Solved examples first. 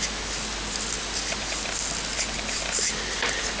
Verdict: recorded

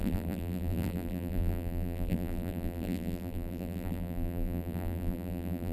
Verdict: remade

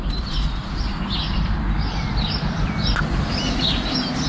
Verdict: recorded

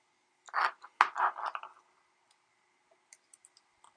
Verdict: recorded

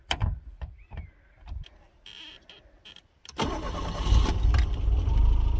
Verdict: remade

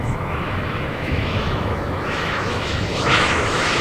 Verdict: remade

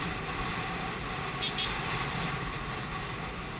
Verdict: remade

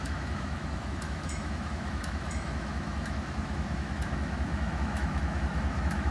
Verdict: remade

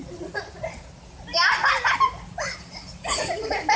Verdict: recorded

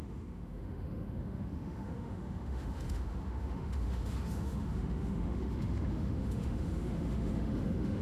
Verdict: remade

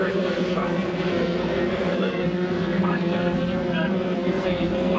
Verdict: remade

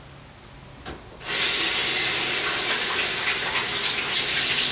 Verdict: recorded